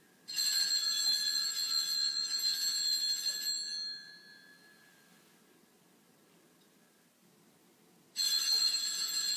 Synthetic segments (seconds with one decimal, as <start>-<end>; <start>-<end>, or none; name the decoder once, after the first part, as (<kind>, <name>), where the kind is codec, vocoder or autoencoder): 8.6-9.4 (vocoder, Vocos)